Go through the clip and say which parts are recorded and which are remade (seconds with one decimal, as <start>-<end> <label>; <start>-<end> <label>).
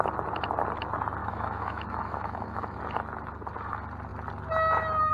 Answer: 0.0-1.2 recorded; 1.2-2.8 remade; 2.8-5.1 recorded